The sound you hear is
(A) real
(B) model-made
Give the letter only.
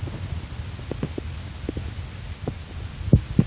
A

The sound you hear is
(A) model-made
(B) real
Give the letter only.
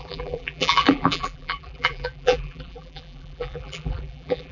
A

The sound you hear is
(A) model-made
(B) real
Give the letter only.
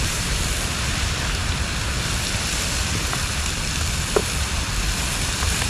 A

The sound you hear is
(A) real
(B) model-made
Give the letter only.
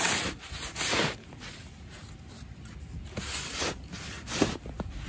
A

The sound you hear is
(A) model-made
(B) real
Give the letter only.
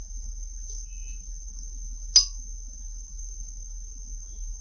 B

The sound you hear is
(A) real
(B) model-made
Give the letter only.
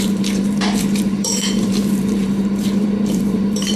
B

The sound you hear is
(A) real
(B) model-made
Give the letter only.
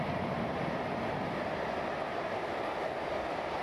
A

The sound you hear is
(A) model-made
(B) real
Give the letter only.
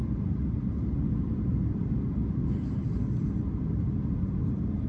B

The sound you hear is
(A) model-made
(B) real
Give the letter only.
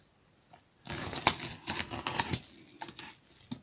B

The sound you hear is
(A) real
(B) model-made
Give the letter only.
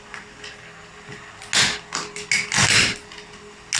A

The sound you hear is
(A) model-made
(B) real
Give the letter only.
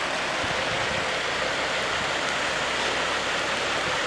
B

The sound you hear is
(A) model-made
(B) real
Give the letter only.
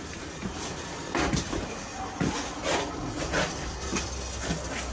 B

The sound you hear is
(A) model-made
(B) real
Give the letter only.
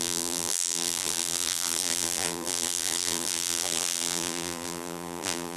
A